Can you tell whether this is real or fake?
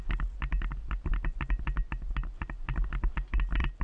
real